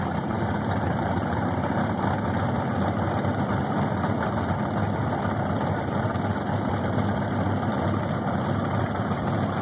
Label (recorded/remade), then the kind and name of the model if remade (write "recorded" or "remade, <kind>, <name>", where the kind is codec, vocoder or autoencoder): remade, vocoder, BigVGAN v2